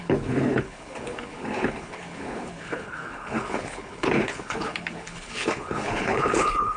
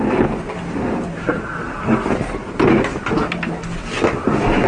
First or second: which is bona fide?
second